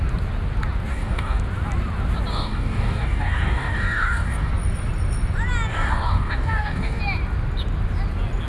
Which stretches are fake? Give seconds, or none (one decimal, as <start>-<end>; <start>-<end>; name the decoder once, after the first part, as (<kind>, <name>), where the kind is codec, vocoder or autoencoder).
0.9-1.4 (codec, DAC); 2.3-4.5; 5.7-7.0